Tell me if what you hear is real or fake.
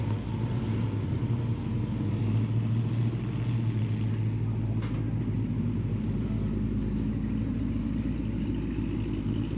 real